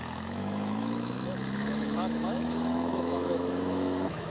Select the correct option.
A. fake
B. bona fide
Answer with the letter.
A